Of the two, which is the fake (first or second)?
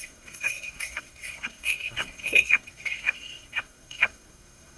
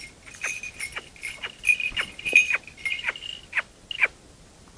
first